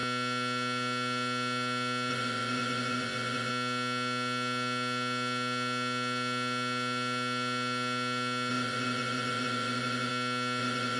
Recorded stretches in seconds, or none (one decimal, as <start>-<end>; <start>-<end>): 0.0-2.1; 3.5-8.5; 10.1-10.6